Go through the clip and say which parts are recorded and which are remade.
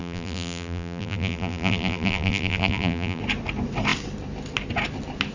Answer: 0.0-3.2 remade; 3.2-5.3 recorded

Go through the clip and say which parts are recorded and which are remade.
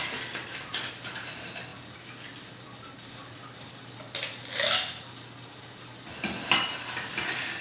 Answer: 0.0-7.6 recorded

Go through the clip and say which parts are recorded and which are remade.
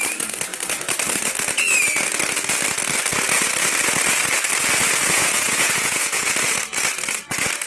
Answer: 0.0-5.2 recorded; 5.2-6.2 remade; 6.2-7.7 recorded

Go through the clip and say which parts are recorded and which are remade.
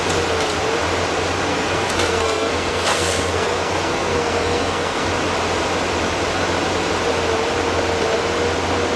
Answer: 0.0-1.5 recorded; 1.5-5.1 remade; 5.1-9.0 recorded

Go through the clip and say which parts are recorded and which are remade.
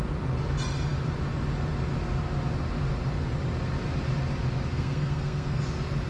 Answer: 0.0-4.7 recorded; 4.7-5.6 remade; 5.6-6.1 recorded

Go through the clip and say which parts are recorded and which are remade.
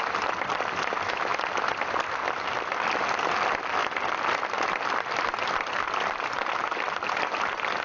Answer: 0.0-1.3 remade; 1.3-2.4 recorded; 2.4-3.8 remade; 3.8-5.7 recorded; 5.7-7.8 remade